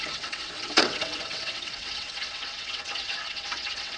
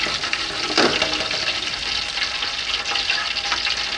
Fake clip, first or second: first